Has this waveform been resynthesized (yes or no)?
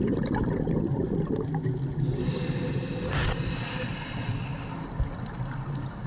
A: no